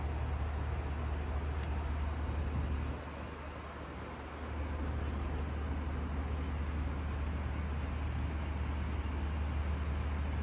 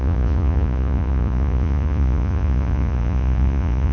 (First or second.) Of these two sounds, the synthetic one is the second